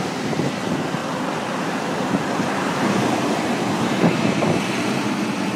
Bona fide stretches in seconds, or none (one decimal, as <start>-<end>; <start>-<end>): 0.0-1.0; 3.8-5.6